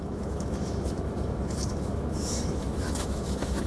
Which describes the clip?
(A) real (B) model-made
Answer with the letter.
B